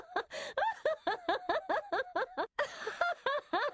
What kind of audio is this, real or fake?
fake